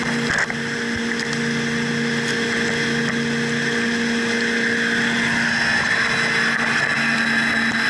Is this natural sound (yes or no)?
yes